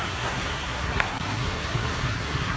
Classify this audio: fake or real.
fake